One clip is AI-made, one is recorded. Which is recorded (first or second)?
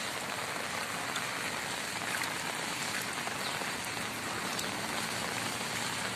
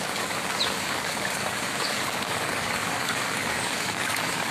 first